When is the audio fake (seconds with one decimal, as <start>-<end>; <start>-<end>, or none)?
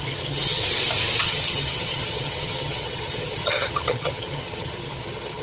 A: 0.0-0.6; 1.2-5.4